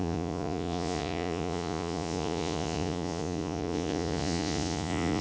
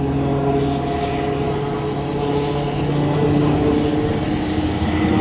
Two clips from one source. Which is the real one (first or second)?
second